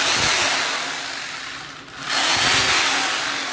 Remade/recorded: recorded